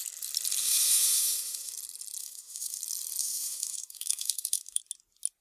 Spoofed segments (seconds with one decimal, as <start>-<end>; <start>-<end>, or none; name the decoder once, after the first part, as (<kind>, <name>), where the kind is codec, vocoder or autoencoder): 0.6-1.7 (autoencoder, DAC-VAE); 2.2-2.8; 3.2-4.8